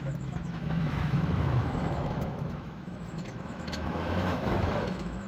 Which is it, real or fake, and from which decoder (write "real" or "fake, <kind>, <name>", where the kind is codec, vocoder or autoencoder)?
fake, autoencoder, DAC-VAE